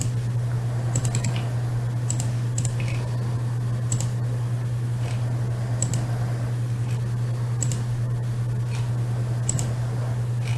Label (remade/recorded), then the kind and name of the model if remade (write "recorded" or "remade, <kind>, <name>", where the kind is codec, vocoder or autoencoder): recorded